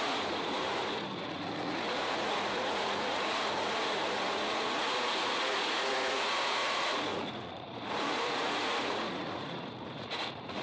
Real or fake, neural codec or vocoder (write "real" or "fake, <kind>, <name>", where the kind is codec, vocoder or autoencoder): fake, vocoder, Vocos